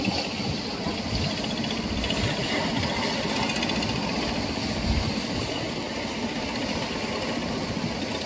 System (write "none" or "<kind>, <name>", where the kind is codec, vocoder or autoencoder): none